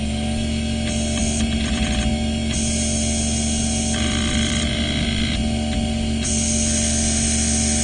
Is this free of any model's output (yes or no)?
yes